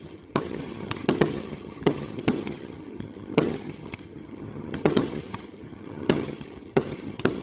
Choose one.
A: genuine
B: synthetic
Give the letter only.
B